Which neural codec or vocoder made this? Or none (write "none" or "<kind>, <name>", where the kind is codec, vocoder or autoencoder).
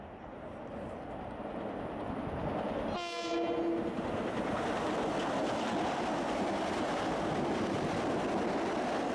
none